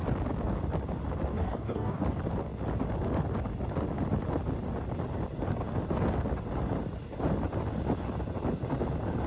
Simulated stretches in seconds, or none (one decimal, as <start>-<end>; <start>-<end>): 1.3-2.0